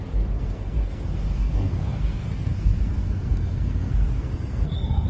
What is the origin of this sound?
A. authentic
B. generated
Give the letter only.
B